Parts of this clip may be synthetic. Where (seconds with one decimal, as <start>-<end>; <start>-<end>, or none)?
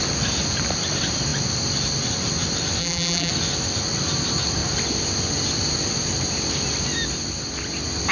2.8-3.3